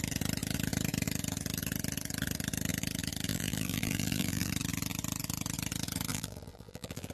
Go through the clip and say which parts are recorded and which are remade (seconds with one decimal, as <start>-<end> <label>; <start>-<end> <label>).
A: 0.0-3.3 recorded; 3.3-4.5 remade; 4.5-6.1 recorded; 6.1-7.1 remade